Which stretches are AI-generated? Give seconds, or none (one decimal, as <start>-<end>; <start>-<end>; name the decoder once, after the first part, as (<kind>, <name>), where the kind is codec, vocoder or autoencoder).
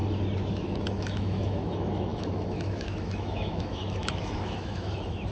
0.5-5.3 (autoencoder, DAC-VAE)